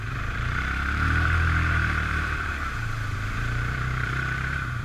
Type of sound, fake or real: fake